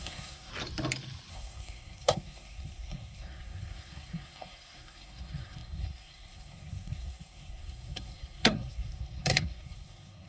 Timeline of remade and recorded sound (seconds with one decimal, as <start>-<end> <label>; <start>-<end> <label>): 0.0-0.5 remade; 0.5-1.3 recorded; 1.3-10.3 remade